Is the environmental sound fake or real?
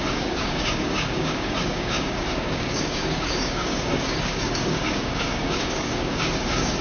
fake